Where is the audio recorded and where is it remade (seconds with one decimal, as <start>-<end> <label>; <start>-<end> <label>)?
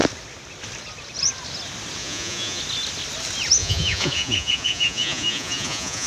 0.0-2.0 recorded; 2.0-2.6 remade; 2.6-3.6 recorded; 3.6-6.1 remade